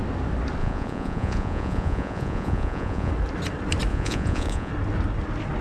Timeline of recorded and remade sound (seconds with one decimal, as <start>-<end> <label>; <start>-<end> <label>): 0.0-0.6 recorded; 0.6-3.1 remade; 3.1-3.9 recorded; 3.9-4.7 remade; 4.7-5.6 recorded